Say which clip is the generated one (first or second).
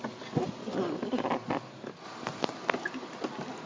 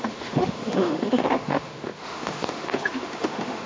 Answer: second